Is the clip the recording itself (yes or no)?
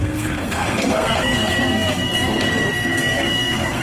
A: no